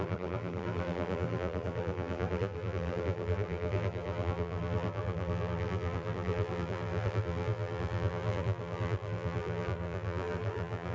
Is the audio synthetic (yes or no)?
yes